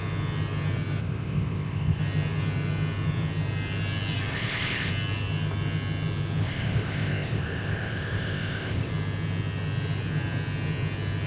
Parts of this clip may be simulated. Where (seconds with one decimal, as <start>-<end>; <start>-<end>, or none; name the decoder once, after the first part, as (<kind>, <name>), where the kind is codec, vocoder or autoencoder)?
1.0-2.0 (codec, ZipCodec); 4.3-4.9; 6.4-8.9